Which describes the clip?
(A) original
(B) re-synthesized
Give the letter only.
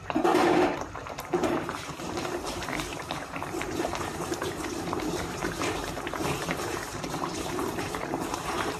B